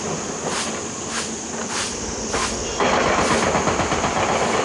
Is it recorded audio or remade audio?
recorded